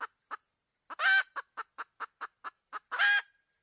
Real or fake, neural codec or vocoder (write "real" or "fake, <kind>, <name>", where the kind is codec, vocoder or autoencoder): real